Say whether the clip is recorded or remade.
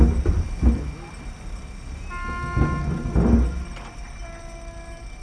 recorded